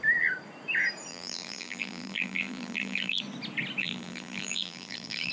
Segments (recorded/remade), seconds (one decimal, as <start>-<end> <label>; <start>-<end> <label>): 0.0-1.1 recorded; 1.1-3.2 remade; 3.2-3.8 recorded; 3.8-5.3 remade